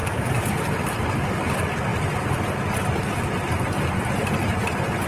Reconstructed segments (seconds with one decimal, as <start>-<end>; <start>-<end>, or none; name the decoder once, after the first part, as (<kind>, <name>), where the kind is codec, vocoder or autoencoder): none